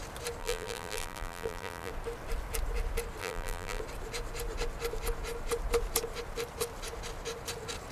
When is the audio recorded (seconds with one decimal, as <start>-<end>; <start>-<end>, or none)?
0.0-0.4; 1.9-3.2; 3.8-7.9